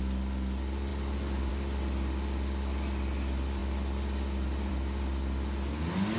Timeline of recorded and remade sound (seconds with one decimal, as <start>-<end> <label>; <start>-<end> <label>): 0.0-6.2 recorded